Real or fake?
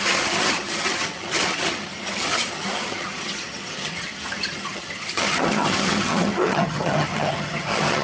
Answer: fake